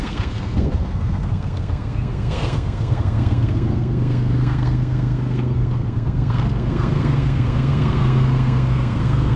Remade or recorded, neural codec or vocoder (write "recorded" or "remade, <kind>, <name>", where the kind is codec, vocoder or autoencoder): remade, codec, SNAC